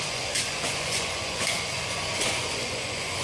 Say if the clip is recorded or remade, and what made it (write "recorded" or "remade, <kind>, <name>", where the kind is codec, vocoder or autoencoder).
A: remade, vocoder, Vocos